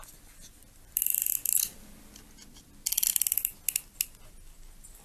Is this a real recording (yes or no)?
yes